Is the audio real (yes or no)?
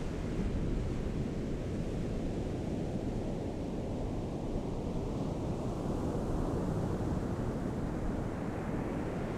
yes